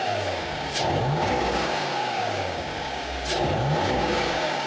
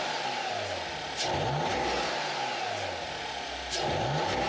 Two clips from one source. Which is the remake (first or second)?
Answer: first